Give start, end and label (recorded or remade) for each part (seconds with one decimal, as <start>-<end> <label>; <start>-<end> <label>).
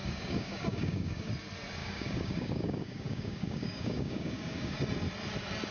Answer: 0.0-1.3 remade; 1.3-1.8 recorded; 1.8-4.8 remade; 4.8-5.7 recorded